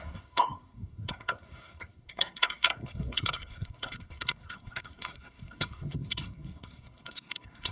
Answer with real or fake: fake